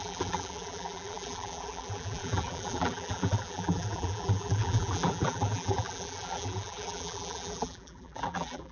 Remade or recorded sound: remade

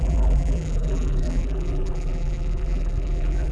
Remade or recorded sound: remade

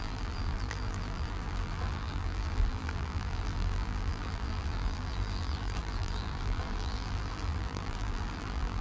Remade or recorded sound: remade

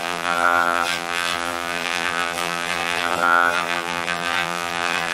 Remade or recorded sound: remade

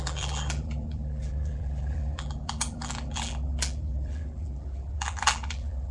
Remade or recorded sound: remade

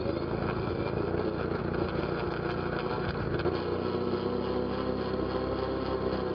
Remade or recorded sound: recorded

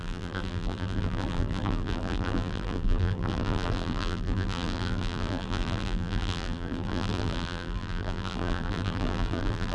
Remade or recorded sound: remade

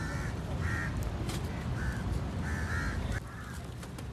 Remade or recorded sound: remade